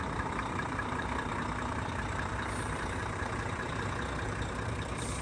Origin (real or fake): fake